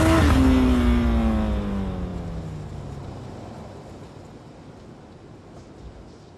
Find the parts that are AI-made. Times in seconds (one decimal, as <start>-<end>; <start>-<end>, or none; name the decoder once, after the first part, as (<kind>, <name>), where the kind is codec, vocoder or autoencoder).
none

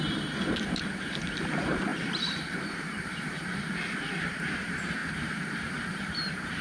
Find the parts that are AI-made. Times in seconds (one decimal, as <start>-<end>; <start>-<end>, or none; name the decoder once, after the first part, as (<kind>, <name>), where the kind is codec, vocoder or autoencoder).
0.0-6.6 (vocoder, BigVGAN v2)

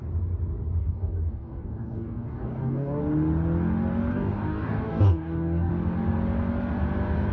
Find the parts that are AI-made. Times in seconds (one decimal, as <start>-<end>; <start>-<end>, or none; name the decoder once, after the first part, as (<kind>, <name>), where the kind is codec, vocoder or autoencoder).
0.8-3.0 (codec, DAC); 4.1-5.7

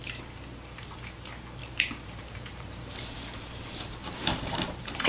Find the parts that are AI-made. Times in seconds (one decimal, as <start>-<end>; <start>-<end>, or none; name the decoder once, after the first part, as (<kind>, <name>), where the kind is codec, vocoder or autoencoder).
1.6-5.1 (vocoder, BigVGAN v2)

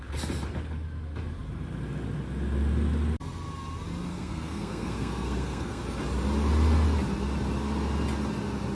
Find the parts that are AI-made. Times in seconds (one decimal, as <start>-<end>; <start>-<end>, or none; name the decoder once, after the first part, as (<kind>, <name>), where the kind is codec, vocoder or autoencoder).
4.1-5.8 (codec, SNAC)

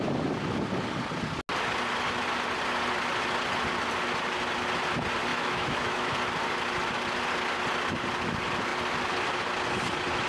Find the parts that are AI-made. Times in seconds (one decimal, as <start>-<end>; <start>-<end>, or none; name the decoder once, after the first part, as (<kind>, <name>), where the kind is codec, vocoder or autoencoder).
5.3-6.1 (autoencoder, DAC-VAE)

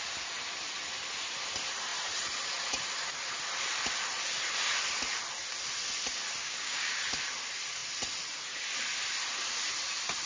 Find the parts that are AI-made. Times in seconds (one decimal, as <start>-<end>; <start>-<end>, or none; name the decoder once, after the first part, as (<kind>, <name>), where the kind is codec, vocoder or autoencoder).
6.4-7.0 (codec, DAC)

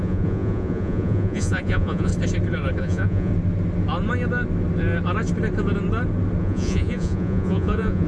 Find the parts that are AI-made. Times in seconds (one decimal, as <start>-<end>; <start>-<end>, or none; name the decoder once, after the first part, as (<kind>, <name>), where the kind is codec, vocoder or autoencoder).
0.0-2.1 (vocoder, Vocos); 2.8-3.3; 6.4-8.1